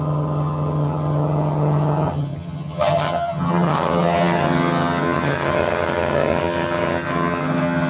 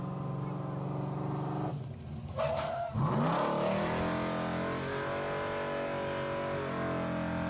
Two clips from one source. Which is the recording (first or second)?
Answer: second